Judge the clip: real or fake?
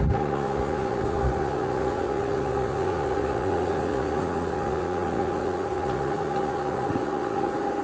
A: fake